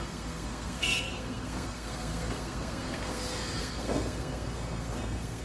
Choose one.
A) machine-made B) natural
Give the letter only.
A